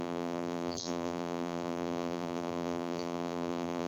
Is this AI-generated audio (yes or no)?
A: yes